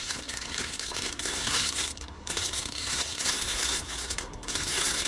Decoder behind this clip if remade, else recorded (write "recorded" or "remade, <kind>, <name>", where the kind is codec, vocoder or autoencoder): remade, codec, SNAC